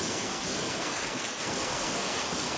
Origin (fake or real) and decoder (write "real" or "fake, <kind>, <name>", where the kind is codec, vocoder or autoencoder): fake, codec, SNAC